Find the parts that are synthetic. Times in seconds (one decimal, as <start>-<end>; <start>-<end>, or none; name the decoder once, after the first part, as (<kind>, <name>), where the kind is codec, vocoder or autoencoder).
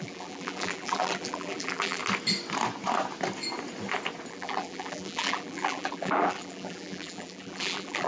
0.0-2.0 (vocoder, BigVGAN v2); 4.3-8.1